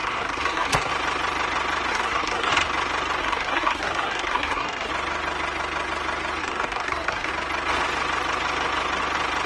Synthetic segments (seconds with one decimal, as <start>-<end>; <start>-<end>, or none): 0.0-0.9; 1.9-2.5; 3.2-4.9; 6.4-7.3